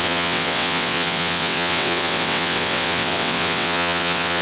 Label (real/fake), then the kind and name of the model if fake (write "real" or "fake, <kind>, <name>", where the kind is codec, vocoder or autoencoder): fake, vocoder, WaveNeXt